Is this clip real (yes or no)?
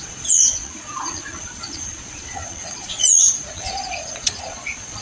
no